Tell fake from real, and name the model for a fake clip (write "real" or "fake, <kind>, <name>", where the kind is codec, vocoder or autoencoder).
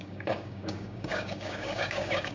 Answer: fake, codec, DAC